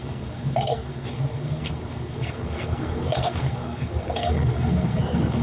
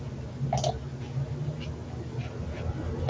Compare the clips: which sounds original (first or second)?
second